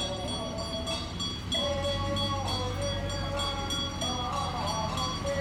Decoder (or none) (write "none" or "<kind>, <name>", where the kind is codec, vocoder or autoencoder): none